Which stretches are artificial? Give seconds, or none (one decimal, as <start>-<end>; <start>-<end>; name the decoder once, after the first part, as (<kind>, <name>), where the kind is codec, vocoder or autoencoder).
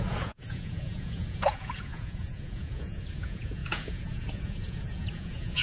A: 0.0-5.6 (vocoder, Vocos)